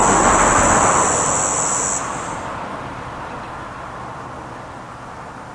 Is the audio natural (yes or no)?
yes